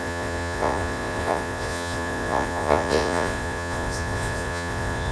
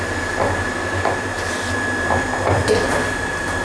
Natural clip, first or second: second